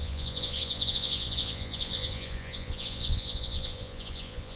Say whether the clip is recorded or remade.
remade